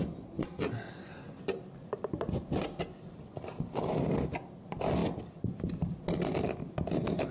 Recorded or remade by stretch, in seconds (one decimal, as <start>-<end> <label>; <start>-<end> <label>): 0.0-7.3 recorded